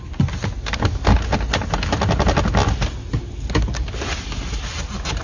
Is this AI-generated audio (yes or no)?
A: no